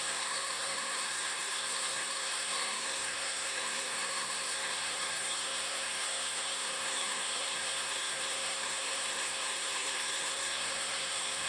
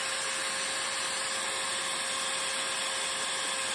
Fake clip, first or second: first